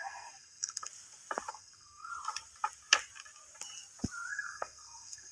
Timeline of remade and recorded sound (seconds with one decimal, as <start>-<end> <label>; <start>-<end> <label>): 0.0-0.9 remade; 0.9-1.5 recorded; 1.5-2.1 remade; 2.1-4.3 recorded; 4.3-5.3 remade